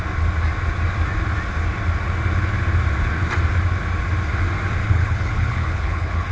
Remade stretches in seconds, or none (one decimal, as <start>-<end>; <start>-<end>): 4.8-6.3